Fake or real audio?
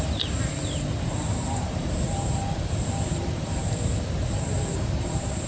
fake